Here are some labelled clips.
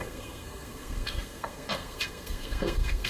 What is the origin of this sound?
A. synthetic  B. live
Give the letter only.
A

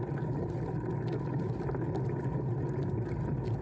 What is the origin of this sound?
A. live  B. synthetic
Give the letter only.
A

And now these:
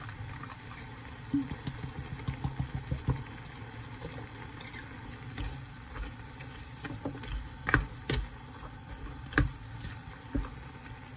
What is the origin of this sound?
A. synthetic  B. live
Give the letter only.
B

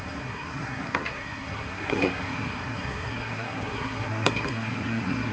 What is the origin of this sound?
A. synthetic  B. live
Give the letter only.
A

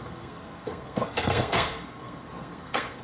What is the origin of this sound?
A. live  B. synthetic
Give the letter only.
B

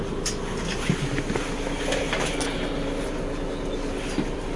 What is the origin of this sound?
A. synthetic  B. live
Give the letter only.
B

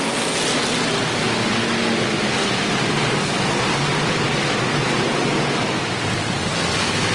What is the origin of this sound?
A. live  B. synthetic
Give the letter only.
A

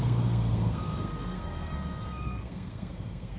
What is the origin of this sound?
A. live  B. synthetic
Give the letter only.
B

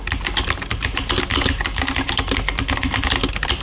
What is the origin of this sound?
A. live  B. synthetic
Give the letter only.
A